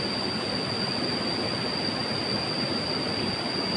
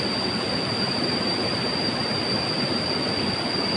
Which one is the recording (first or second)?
first